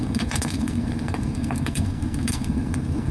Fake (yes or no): yes